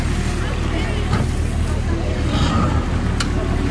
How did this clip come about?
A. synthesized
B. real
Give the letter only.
B